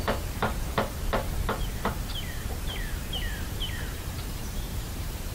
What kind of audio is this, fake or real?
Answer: fake